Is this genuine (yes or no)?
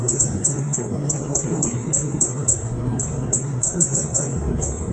no